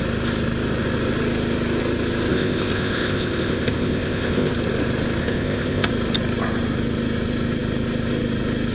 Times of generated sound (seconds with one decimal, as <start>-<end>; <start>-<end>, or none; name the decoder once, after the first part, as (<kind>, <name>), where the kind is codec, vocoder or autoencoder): 2.3-4.5 (codec, ZipCodec); 5.2-5.9